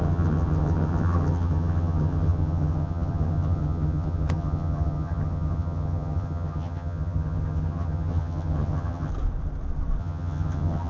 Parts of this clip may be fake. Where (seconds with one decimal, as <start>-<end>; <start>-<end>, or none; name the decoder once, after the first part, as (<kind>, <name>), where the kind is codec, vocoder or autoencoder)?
0.0-9.1 (vocoder, HiFi-GAN); 10.0-10.9